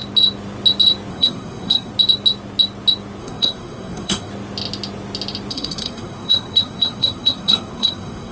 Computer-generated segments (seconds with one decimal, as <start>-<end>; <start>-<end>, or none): 1.1-1.9; 3.2-4.3; 5.5-8.3

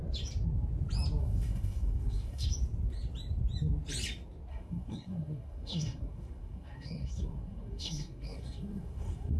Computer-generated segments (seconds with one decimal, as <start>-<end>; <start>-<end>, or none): 1.2-2.5; 4.5-9.4

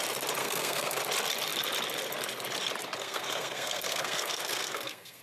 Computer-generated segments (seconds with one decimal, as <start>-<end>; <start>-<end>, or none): 0.4-1.0; 3.0-5.2

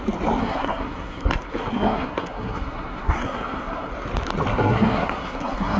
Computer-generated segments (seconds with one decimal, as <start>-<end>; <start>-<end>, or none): 0.4-3.9; 4.5-5.8